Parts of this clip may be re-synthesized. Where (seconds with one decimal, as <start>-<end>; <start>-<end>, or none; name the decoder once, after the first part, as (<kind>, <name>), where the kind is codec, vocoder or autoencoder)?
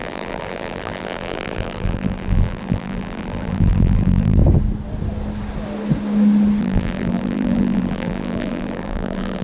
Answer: 0.0-4.4 (vocoder, BigVGAN v2); 6.6-9.4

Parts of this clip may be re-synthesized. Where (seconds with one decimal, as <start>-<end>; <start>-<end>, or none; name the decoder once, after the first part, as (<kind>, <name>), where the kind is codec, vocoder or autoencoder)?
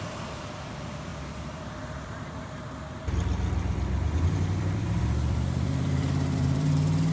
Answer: 0.0-7.1 (vocoder, BigVGAN v2)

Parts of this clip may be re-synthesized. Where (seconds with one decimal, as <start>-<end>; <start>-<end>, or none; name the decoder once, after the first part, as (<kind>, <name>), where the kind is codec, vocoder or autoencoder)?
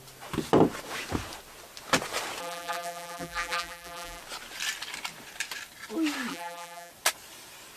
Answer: 2.4-4.2 (vocoder, BigVGAN v2); 6.3-6.9